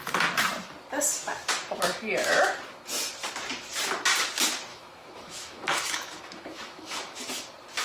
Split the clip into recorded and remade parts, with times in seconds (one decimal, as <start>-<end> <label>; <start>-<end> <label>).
0.0-4.7 recorded; 4.7-7.2 remade; 7.2-7.8 recorded